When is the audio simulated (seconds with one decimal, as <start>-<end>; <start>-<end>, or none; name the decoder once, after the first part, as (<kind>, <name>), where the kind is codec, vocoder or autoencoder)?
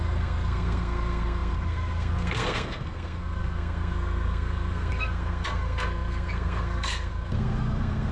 0.0-8.1 (codec, SNAC)